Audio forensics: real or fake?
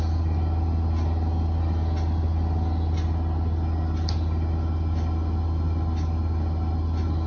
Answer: real